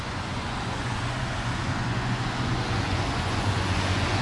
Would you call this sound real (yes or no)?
no